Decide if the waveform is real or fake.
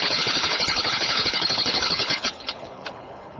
fake